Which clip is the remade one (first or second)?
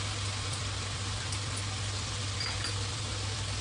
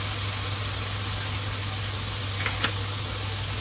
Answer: first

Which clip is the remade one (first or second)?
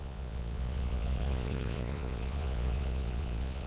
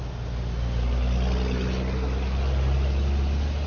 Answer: first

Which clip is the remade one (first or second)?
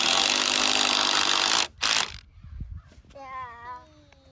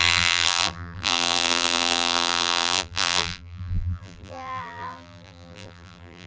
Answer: second